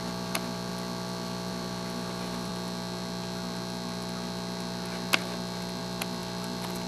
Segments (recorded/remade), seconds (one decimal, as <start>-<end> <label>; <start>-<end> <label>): 0.0-2.5 remade; 2.5-5.8 recorded; 5.8-6.9 remade